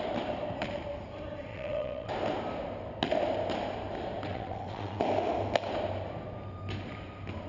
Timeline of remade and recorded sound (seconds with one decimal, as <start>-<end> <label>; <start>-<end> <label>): 0.0-1.5 recorded; 1.5-2.1 remade; 2.1-4.3 recorded; 4.3-5.0 remade; 5.0-7.5 recorded